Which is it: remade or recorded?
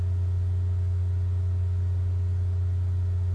recorded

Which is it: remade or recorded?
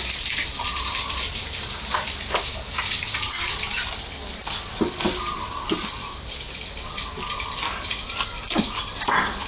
recorded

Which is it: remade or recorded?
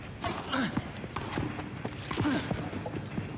recorded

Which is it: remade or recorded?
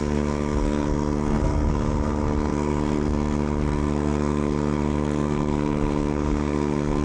remade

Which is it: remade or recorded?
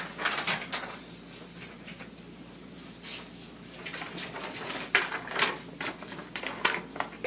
recorded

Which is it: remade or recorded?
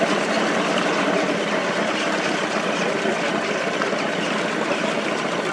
recorded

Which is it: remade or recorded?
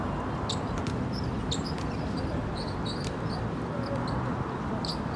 recorded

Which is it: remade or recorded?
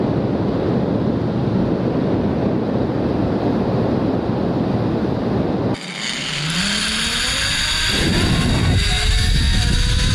recorded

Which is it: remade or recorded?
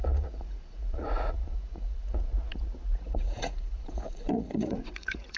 remade